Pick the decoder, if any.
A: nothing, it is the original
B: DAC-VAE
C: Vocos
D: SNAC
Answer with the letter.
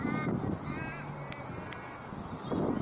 A